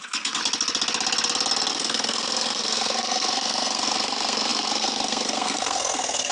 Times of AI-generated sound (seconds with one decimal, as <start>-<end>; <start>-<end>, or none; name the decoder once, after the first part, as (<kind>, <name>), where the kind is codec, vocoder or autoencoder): 0.0-0.4 (codec, SNAC); 1.7-6.3